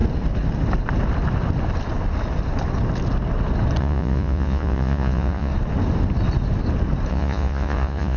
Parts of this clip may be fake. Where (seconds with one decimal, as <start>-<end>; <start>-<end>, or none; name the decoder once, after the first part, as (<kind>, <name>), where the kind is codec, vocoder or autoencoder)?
3.8-5.5 (vocoder, Vocos); 7.1-8.2